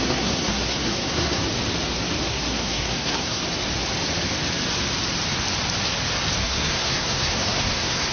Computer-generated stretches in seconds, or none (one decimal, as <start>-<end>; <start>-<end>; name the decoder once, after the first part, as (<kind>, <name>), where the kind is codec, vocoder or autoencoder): 0.0-1.5 (codec, SNAC); 2.2-3.4; 6.4-8.1